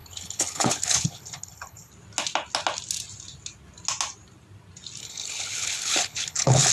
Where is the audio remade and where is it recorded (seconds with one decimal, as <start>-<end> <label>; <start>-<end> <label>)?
0.0-1.9 remade; 1.9-5.0 recorded; 5.0-6.7 remade